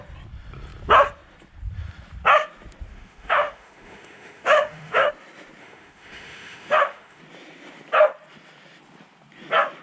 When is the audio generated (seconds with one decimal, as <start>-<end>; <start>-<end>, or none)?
2.9-5.1; 5.6-7.2